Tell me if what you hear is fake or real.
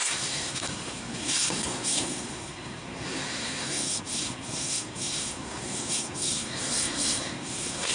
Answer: fake